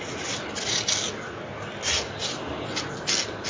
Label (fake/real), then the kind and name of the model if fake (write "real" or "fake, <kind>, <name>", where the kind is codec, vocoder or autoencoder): real